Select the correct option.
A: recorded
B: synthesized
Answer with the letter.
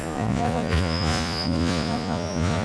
B